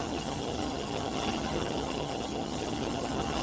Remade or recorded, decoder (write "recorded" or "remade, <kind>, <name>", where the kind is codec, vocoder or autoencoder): remade, vocoder, HiFi-GAN